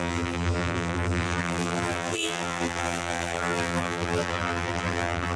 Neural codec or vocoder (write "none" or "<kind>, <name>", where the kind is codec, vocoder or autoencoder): vocoder, BigVGAN v2